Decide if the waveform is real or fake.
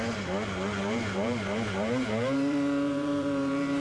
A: fake